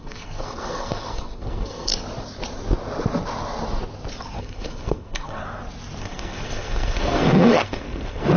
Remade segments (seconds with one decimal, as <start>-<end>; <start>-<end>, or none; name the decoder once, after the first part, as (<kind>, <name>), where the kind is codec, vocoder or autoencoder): 0.0-1.9 (codec, SNAC); 4.4-5.4; 6.0-8.4